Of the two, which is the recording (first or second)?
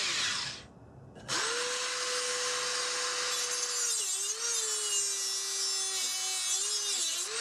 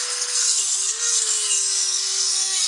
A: first